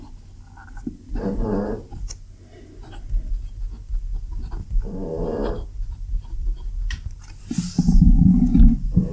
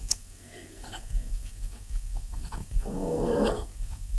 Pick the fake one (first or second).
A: second